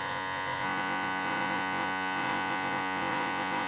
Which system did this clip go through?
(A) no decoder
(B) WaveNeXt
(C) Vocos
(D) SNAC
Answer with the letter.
C